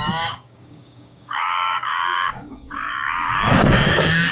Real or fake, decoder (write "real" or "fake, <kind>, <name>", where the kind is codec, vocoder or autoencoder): fake, codec, DAC